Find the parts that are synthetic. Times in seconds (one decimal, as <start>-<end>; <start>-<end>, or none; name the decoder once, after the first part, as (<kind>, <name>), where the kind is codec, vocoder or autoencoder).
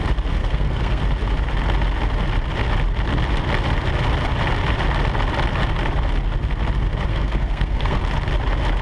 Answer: 0.4-1.0 (codec, SNAC); 7.1-8.0